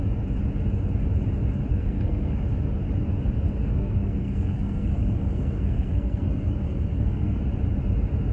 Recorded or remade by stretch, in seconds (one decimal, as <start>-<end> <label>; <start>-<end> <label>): 0.0-1.7 recorded; 1.7-2.4 remade; 2.4-3.6 recorded; 3.6-7.4 remade; 7.4-8.3 recorded